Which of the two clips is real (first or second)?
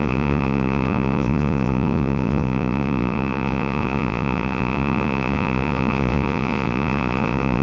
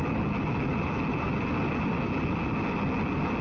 second